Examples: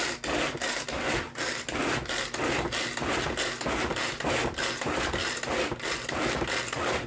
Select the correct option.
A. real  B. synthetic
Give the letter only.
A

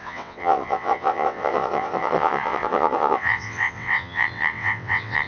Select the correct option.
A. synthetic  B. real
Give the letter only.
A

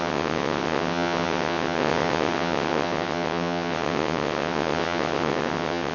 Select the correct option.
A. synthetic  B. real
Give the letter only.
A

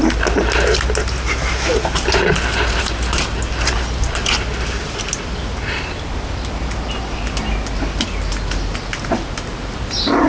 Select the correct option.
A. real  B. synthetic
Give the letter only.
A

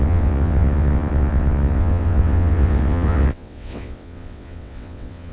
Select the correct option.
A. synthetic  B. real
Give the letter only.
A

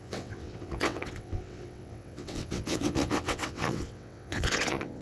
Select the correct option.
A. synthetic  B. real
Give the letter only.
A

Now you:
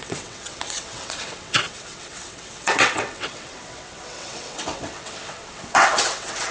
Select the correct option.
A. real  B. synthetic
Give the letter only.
B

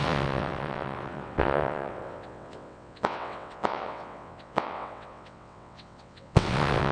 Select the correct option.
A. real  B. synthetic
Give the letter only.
B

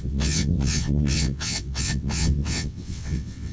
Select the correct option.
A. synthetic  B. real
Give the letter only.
A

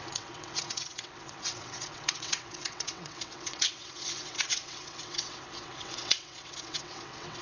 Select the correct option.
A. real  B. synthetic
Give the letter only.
B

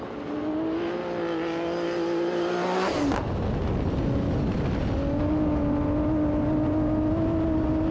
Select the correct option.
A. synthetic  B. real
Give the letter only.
B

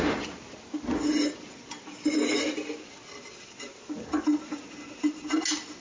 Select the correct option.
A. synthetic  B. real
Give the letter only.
B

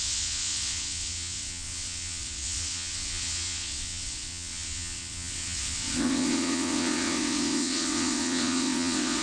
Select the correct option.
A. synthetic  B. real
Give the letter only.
A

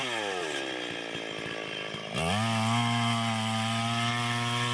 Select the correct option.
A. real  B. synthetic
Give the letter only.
A